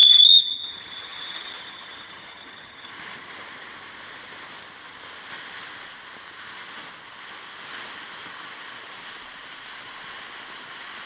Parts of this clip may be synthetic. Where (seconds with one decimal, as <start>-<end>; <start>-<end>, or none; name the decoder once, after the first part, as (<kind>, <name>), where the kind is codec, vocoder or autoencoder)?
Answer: 0.0-2.9 (vocoder, HiFi-GAN)